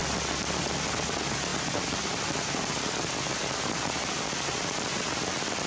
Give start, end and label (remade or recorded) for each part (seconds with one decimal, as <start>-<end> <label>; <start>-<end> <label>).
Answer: 0.0-5.7 recorded